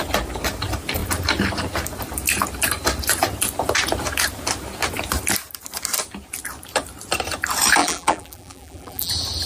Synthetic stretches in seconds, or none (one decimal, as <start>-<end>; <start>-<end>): 7.8-9.1